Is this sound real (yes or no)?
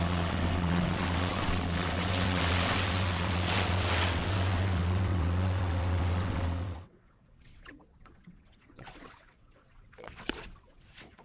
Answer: no